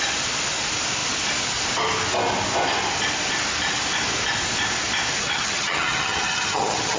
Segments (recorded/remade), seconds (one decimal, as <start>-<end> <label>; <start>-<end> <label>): 0.0-5.2 recorded; 5.2-7.0 remade